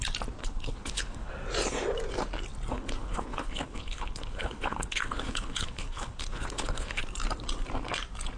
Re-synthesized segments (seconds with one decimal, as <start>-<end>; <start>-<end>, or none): 0.4-1.3; 2.7-7.0